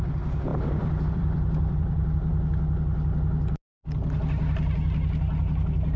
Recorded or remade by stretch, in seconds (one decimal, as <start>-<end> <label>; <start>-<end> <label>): 0.0-2.3 remade; 2.3-6.0 recorded